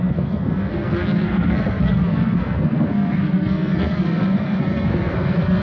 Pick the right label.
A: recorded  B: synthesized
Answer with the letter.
B